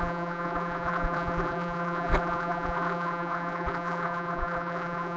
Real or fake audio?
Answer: fake